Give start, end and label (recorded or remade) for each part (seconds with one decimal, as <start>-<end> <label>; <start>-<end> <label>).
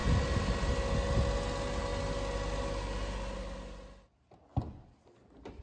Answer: 0.0-5.6 recorded